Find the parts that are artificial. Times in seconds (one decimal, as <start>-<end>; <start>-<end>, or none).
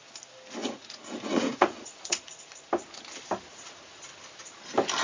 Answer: 0.6-2.7; 3.5-4.0